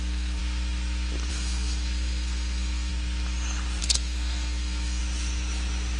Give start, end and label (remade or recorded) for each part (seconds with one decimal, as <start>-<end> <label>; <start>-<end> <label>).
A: 0.0-0.4 remade; 0.4-1.3 recorded; 1.3-2.9 remade; 2.9-3.8 recorded; 3.8-5.0 remade; 5.0-6.0 recorded